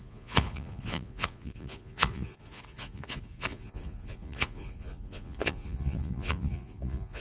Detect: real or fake fake